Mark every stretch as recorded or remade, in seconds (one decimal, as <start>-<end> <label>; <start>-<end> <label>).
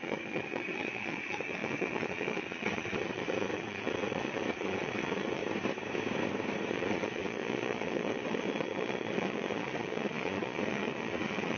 0.0-5.4 remade; 5.4-6.7 recorded; 6.7-11.6 remade